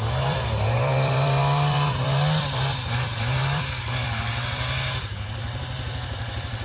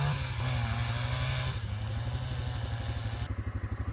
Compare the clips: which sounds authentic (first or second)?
second